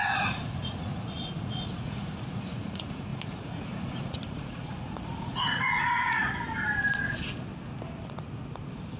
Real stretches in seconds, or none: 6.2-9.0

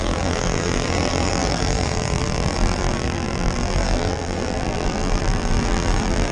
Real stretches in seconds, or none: none

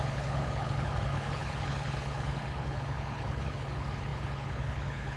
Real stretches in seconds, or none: none

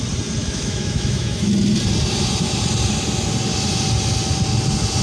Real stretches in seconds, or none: 0.0-0.4; 1.5-5.0

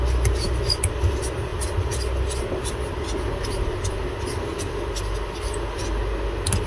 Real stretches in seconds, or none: 0.0-6.7